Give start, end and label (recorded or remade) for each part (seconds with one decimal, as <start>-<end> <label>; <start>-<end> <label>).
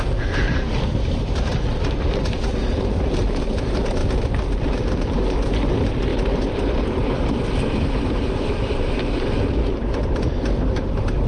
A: 0.0-11.3 remade